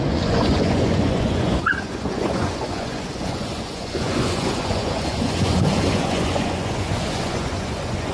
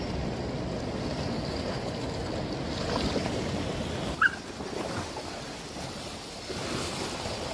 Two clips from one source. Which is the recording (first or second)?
second